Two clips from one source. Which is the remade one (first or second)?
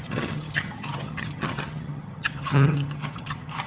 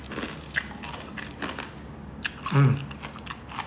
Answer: first